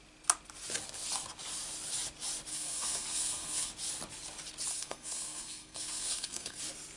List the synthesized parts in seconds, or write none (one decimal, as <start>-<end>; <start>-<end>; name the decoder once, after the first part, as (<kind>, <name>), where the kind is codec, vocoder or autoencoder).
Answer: 2.5-3.7 (codec, SNAC); 4.7-6.6